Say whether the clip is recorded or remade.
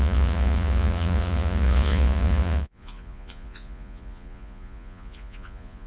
remade